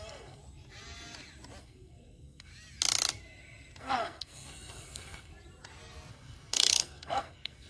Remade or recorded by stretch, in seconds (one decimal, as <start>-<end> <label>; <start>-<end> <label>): 0.0-0.4 remade; 0.4-1.6 recorded; 1.6-2.5 remade; 2.5-3.8 recorded; 3.8-5.3 remade; 5.3-6.1 recorded; 6.1-7.7 remade

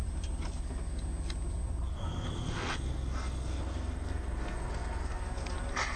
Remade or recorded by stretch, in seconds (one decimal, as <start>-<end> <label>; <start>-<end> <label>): 0.0-1.9 recorded; 1.9-5.2 remade; 5.2-6.0 recorded

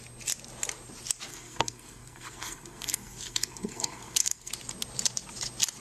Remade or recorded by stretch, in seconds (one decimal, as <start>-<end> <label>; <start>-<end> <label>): 0.0-1.3 recorded; 1.3-4.5 remade; 4.5-5.8 recorded

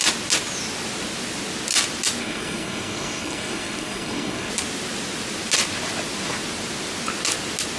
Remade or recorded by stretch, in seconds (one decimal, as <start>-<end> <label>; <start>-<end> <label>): 0.0-2.2 recorded; 2.2-4.5 remade; 4.5-7.8 recorded

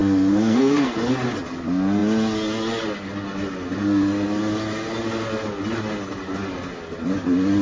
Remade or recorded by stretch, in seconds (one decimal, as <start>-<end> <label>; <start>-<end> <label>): 0.0-1.1 remade; 1.1-7.6 recorded

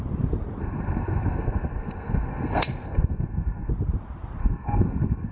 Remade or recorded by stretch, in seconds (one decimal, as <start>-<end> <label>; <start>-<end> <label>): 0.0-0.6 recorded; 0.6-3.7 remade; 3.7-4.4 recorded; 4.4-5.3 remade